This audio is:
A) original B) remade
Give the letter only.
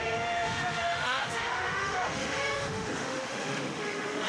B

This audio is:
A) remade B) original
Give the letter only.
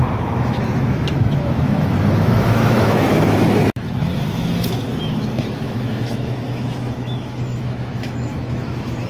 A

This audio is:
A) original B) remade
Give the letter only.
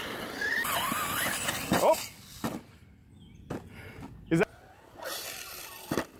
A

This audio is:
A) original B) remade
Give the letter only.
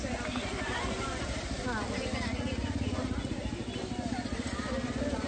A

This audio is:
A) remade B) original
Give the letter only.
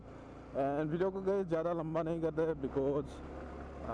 B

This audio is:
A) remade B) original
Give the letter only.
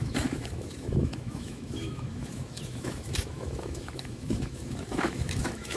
A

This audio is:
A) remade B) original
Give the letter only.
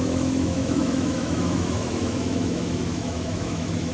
A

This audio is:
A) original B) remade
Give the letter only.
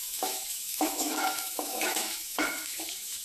B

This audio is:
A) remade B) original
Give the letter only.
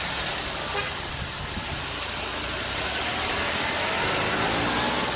B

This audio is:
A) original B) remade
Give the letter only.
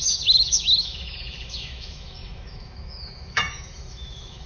B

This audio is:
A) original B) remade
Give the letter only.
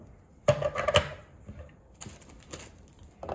A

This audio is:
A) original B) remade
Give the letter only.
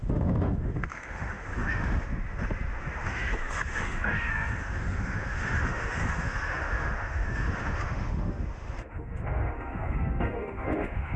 B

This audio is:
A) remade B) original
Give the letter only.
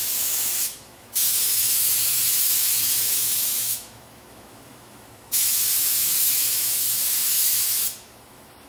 A